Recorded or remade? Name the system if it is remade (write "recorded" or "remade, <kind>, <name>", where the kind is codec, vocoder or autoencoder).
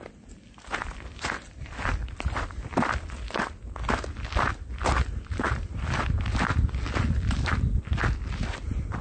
recorded